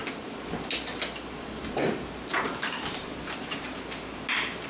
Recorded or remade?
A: recorded